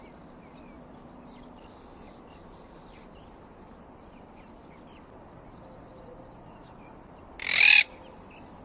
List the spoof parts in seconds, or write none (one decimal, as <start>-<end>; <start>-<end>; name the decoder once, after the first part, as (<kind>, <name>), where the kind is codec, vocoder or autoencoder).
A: none